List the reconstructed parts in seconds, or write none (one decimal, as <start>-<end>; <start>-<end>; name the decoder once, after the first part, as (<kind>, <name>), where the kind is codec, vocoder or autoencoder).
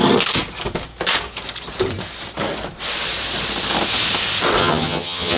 4.6-5.4 (vocoder, HiFi-GAN)